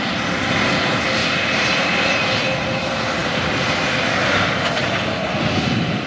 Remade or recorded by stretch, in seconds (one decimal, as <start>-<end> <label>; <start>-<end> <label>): 0.0-1.2 recorded; 1.2-2.4 remade; 2.4-6.1 recorded